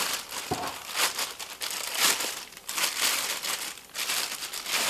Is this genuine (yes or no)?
yes